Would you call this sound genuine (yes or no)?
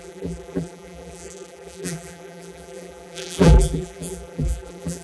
no